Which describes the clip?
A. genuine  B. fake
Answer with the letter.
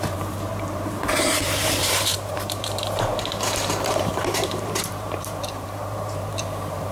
B